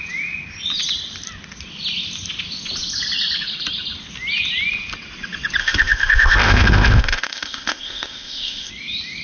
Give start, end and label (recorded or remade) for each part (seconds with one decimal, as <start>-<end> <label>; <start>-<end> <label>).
0.0-5.6 recorded; 5.6-8.7 remade; 8.7-9.2 recorded